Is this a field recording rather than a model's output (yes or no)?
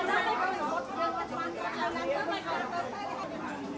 yes